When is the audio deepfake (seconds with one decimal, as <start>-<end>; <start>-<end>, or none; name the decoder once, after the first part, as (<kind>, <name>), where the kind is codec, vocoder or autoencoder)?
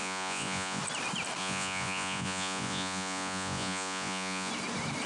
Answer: 0.0-0.8 (vocoder, Vocos); 1.4-4.5